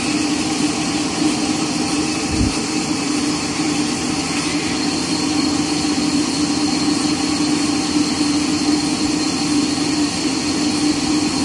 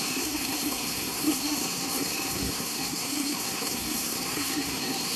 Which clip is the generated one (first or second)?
second